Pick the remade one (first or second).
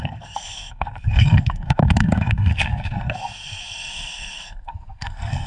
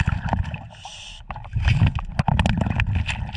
first